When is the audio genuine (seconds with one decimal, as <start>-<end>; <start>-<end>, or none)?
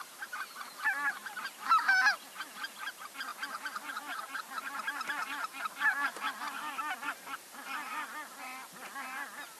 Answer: 0.0-9.6